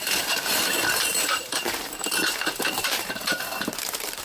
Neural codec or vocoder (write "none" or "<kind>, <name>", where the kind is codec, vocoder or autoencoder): vocoder, BigVGAN v2